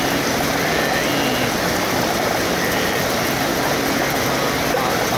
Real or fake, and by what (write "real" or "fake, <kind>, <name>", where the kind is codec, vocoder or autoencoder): real